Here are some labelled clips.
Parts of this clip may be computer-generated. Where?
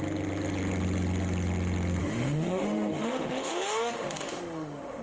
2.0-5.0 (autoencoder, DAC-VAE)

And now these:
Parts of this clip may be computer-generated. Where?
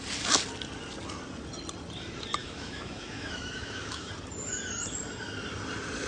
2.4-4.1 (autoencoder, DAC-VAE)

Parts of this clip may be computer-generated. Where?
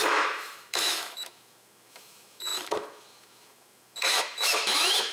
0.0-5.1 (autoencoder, DAC-VAE)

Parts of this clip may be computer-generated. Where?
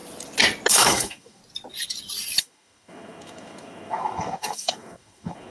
0.7-1.4 (autoencoder, DAC-VAE); 2.4-5.5